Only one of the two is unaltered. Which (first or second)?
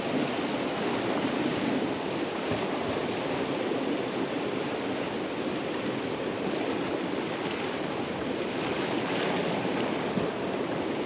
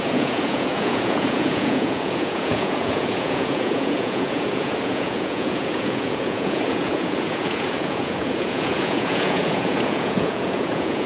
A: first